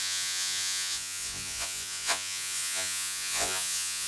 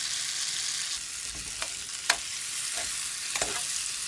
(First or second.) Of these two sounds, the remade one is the first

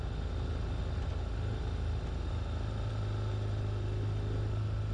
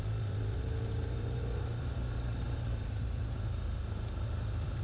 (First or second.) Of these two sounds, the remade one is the second